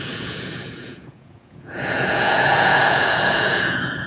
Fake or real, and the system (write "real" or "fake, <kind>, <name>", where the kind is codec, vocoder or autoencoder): fake, vocoder, Vocos